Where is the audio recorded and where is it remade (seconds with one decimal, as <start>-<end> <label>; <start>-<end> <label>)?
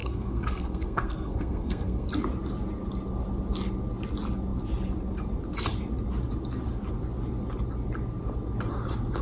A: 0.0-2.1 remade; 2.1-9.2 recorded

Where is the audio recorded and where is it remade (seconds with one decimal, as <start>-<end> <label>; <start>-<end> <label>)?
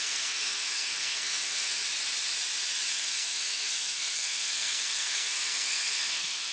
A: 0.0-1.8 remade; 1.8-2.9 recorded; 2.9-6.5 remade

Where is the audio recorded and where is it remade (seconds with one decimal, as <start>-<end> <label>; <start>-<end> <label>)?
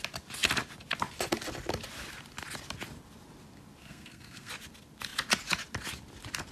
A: 0.0-3.8 recorded; 3.8-4.5 remade; 4.5-6.5 recorded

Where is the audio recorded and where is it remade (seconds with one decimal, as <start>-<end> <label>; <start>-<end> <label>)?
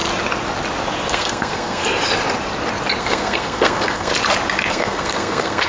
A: 0.0-1.1 recorded; 1.1-1.8 remade; 1.8-3.0 recorded; 3.0-4.1 remade; 4.1-4.7 recorded; 4.7-5.7 remade